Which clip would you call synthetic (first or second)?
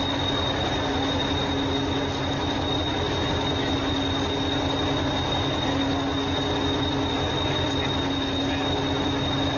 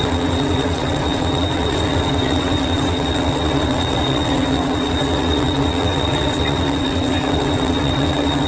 second